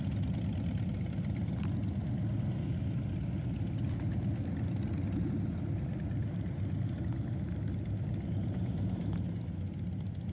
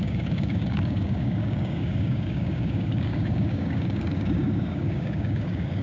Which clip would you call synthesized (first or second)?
second